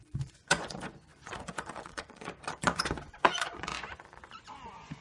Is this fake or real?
fake